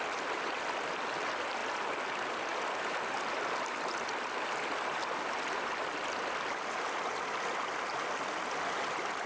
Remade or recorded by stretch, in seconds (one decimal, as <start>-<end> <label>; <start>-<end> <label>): 0.0-9.3 recorded